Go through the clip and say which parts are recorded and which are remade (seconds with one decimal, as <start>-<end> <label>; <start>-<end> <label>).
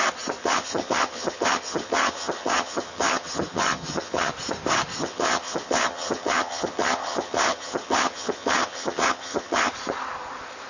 0.0-0.4 recorded; 0.4-4.3 remade; 4.3-5.0 recorded; 5.0-9.7 remade; 9.7-10.7 recorded